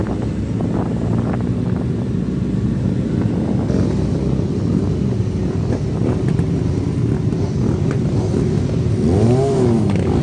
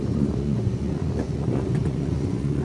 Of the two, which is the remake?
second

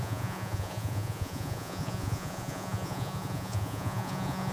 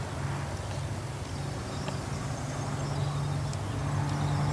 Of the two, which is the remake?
first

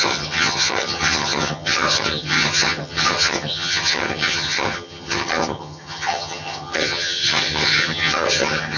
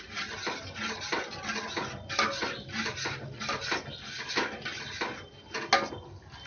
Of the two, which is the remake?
first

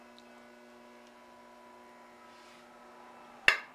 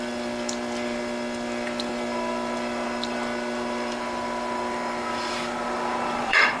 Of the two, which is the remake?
second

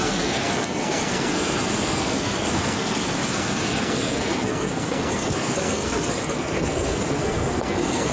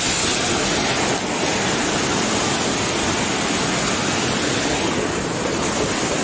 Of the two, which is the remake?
first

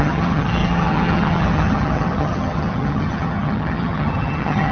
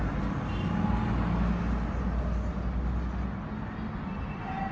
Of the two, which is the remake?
first